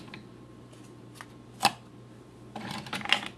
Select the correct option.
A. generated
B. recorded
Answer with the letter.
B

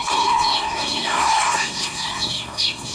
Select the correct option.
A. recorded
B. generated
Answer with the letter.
B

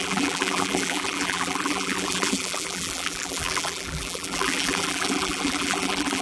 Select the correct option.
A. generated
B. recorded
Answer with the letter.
A